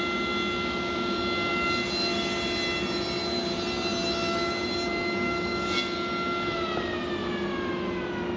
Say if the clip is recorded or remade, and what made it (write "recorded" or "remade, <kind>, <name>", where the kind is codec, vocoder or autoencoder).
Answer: recorded